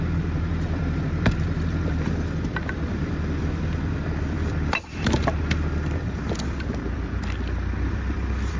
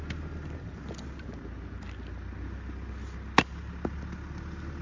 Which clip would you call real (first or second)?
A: second